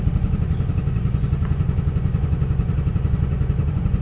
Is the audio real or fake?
fake